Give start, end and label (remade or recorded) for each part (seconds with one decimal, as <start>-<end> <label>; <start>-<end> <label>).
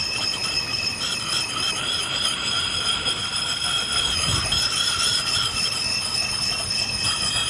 0.0-7.5 recorded